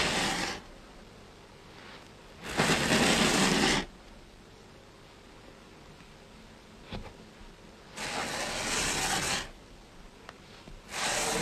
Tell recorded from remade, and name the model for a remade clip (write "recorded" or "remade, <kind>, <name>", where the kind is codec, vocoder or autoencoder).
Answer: recorded